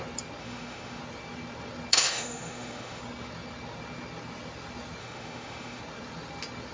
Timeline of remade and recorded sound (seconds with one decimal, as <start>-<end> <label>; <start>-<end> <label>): 0.0-0.4 recorded; 0.4-1.0 remade; 1.0-1.9 recorded; 1.9-3.0 remade; 3.0-5.0 recorded; 5.0-5.8 remade; 5.8-6.7 recorded